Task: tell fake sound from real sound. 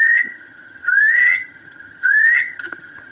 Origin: fake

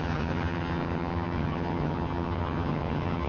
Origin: fake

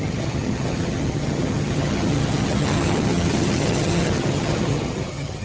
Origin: fake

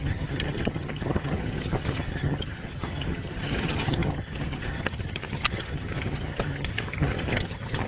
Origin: fake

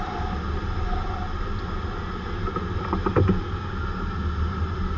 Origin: real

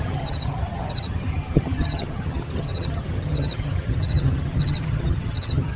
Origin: fake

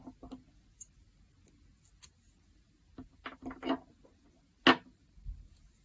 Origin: real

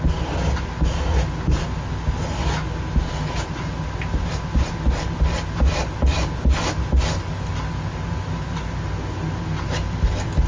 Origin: real